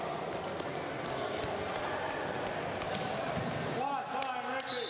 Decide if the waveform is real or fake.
real